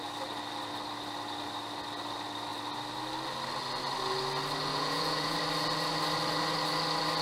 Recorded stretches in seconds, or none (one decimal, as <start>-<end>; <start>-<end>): 0.0-4.7; 5.4-7.2